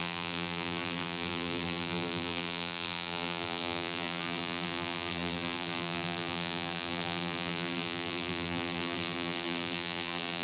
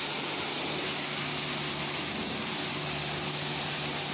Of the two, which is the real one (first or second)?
second